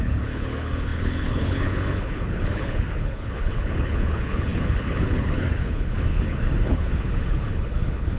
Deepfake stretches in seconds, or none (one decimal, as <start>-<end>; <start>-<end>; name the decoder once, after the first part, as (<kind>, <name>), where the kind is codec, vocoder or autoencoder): 0.0-8.2 (codec, HILCodec)